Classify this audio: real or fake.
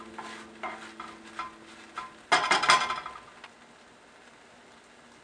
real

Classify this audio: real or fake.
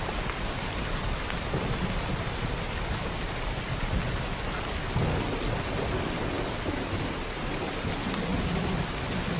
real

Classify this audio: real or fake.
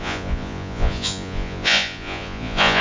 fake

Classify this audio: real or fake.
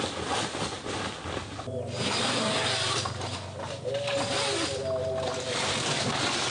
real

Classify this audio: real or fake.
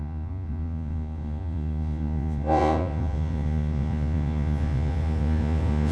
fake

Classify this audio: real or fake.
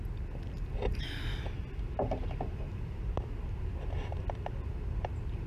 real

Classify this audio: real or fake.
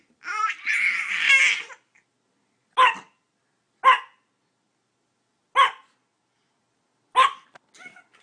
real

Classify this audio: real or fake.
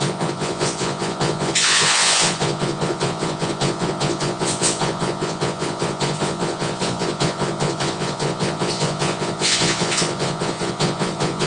fake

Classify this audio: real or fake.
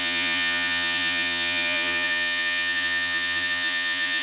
fake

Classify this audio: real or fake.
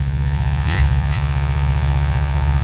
fake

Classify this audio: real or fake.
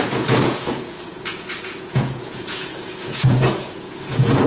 fake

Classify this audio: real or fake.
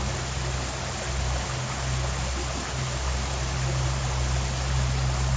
real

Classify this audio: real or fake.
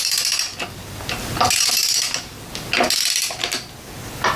real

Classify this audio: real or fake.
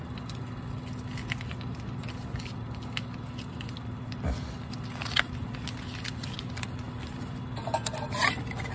real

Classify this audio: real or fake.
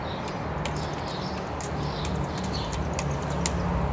real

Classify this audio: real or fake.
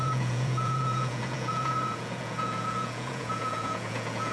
fake